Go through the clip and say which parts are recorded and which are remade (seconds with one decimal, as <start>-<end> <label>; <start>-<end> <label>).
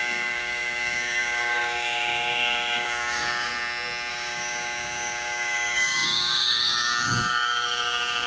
0.0-3.5 remade; 3.5-4.1 recorded; 4.1-8.3 remade